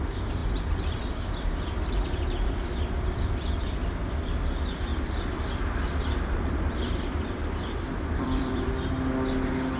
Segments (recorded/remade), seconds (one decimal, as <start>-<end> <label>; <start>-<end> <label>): 0.0-0.4 recorded; 0.4-3.6 remade; 3.6-4.9 recorded; 4.9-8.7 remade; 8.7-9.8 recorded